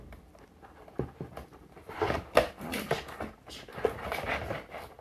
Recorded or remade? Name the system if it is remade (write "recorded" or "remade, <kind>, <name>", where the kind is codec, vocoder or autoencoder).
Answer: recorded